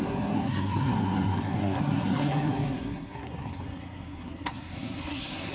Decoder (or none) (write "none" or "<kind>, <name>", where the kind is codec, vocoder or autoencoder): codec, SNAC